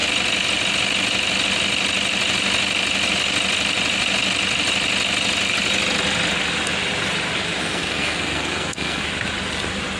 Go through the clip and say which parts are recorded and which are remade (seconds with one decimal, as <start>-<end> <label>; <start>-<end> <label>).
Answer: 0.0-7.6 recorded; 7.6-9.0 remade; 9.0-10.0 recorded